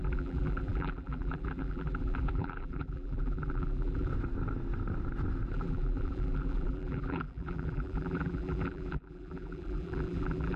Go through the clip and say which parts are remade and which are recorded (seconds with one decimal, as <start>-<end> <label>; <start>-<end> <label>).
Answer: 0.0-4.1 remade; 4.1-5.5 recorded; 5.5-10.6 remade